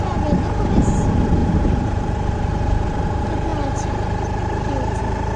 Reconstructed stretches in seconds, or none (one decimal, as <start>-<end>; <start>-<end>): 1.4-2.2